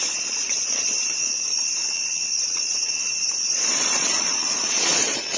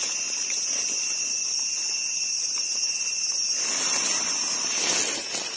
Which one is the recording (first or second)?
second